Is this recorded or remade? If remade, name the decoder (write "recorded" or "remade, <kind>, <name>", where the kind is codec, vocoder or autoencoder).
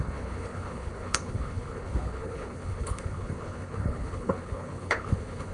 remade, codec, HILCodec